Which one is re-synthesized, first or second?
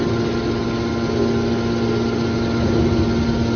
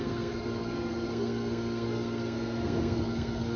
second